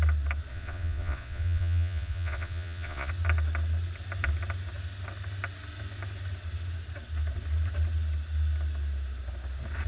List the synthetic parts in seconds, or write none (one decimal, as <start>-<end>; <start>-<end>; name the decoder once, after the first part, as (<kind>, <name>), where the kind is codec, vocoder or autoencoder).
0.5-3.1 (vocoder, Vocos)